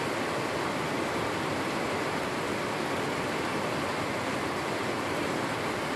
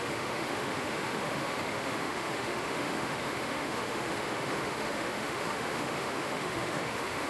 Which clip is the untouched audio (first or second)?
first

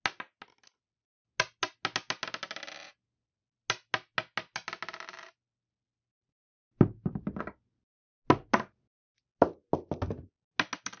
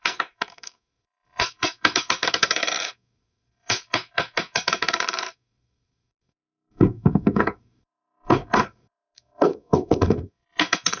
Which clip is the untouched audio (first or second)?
first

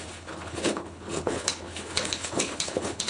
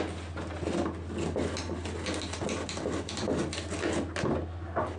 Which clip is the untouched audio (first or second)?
second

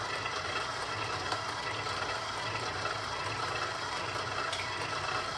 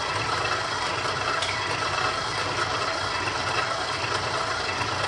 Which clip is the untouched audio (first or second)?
first